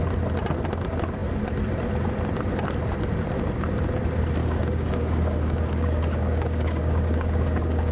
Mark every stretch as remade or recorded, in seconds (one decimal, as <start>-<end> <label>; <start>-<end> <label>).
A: 0.0-4.4 recorded; 4.4-7.9 remade